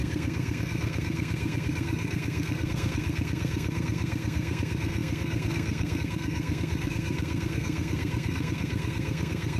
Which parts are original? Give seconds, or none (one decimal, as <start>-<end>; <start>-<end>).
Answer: none